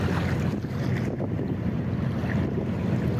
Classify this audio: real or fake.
real